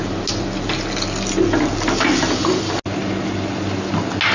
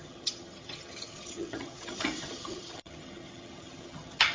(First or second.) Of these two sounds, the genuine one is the first